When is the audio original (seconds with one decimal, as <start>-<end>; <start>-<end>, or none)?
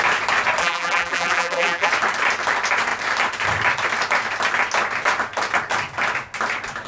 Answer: 0.0-0.6; 1.9-6.9